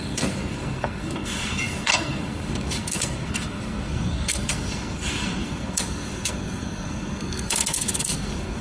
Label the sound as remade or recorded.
remade